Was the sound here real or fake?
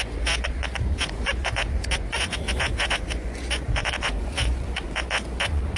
fake